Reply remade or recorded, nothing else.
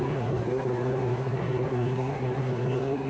remade